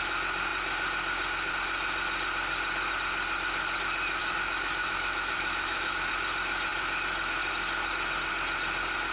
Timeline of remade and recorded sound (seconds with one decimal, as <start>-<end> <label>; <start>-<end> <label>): 0.0-4.2 recorded; 4.2-6.1 remade; 6.1-9.1 recorded